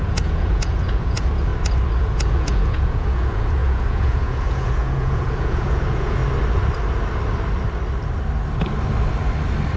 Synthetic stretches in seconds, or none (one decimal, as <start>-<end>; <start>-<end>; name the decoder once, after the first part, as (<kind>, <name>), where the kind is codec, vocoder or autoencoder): 0.0-1.5 (vocoder, Vocos); 2.0-6.2